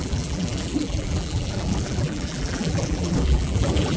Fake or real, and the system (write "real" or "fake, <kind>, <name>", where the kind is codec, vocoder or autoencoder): fake, vocoder, BigVGAN v2